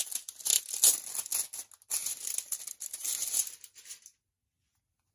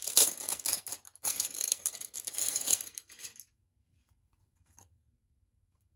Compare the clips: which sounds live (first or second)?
first